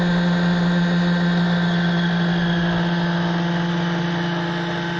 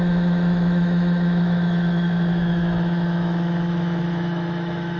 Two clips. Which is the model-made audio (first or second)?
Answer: second